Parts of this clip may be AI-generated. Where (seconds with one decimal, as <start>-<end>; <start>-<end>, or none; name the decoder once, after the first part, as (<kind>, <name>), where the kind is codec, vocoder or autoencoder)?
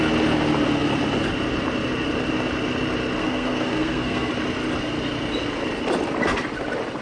3.2-4.3 (codec, SNAC)